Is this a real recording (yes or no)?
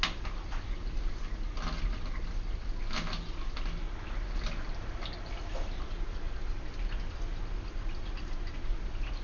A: yes